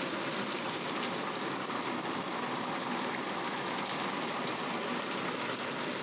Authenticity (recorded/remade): recorded